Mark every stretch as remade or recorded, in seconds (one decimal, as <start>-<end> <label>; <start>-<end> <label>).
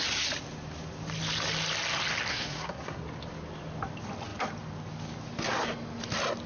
0.0-2.3 recorded; 2.3-3.0 remade; 3.0-6.5 recorded